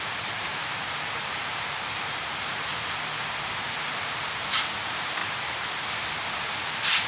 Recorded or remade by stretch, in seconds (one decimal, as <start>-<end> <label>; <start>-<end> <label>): 0.0-0.6 remade; 0.6-1.2 recorded; 1.2-2.7 remade; 2.7-4.3 recorded; 4.3-5.2 remade; 5.2-7.1 recorded